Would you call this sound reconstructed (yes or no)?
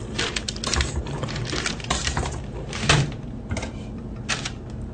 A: yes